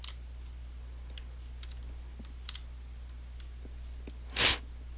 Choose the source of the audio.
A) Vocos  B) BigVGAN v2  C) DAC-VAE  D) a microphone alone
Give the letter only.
D